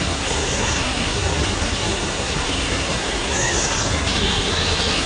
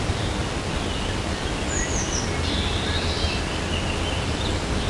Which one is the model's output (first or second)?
first